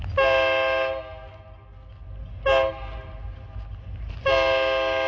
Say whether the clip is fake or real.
real